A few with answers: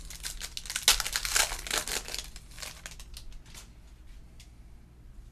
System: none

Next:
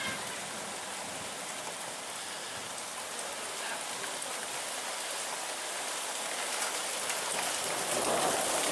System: none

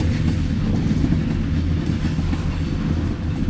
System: none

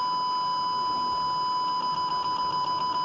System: none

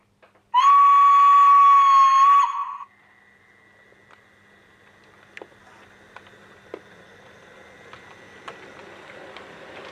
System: none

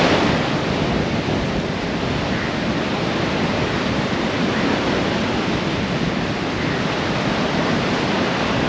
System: none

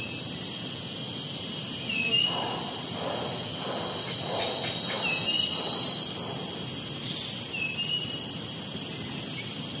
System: none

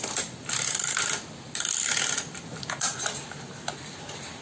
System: none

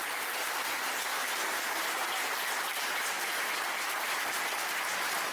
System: vocoder, BigVGAN v2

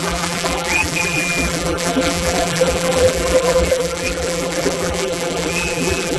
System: vocoder, BigVGAN v2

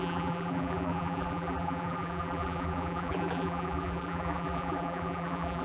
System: vocoder, BigVGAN v2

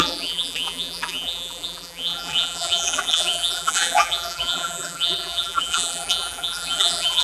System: vocoder, BigVGAN v2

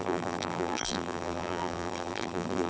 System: vocoder, BigVGAN v2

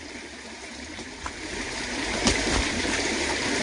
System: vocoder, BigVGAN v2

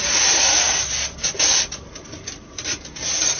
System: vocoder, BigVGAN v2